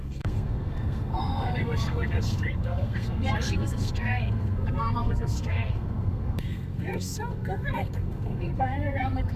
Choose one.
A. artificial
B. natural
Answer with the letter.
A